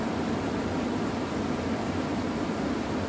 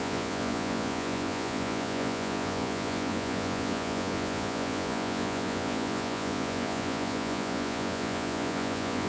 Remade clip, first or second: second